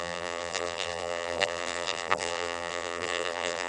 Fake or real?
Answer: fake